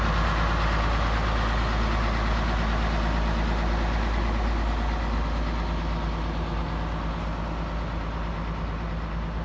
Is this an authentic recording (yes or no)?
yes